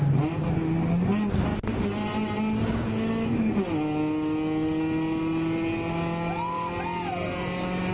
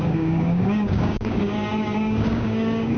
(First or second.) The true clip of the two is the first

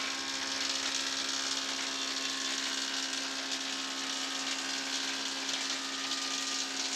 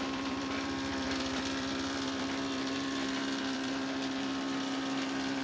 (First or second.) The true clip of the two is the first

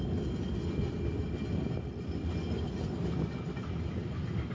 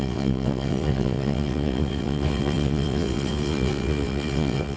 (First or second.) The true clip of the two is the first